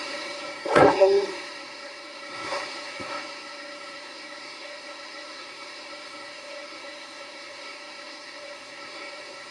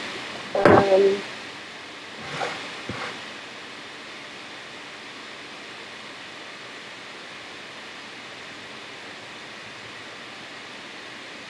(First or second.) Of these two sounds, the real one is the second